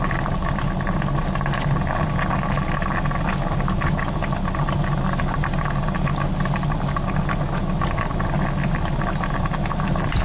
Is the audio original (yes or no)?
yes